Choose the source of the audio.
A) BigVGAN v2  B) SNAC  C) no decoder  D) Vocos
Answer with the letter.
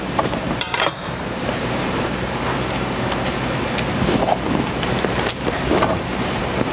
A